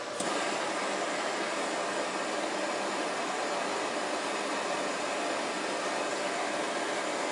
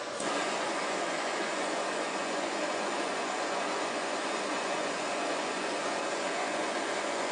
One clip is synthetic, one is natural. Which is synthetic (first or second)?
second